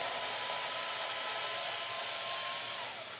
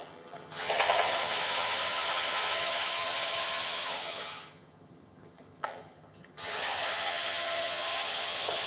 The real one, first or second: first